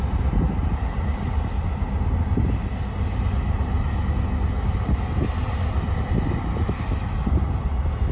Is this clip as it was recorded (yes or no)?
yes